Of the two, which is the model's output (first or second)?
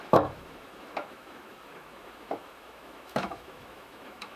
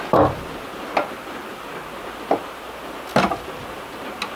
first